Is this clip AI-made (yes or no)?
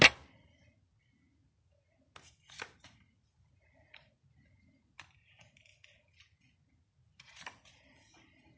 no